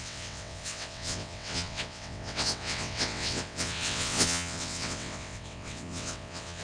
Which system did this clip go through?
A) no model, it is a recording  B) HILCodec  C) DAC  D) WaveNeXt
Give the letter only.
D